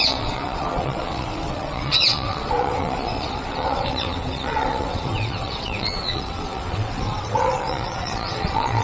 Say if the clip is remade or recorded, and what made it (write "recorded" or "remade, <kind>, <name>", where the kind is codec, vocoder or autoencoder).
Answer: remade, vocoder, WaveNeXt